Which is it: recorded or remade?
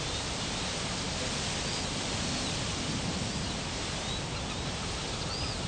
recorded